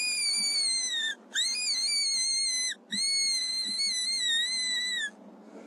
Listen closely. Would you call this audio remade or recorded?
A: recorded